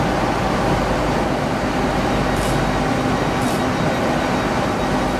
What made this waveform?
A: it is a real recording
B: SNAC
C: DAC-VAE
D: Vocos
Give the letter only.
A